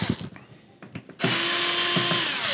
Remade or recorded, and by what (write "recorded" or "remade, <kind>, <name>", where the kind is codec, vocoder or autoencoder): recorded